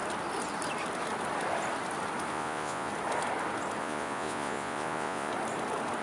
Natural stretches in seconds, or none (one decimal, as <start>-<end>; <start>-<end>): 0.0-2.3; 2.9-3.8; 5.3-6.0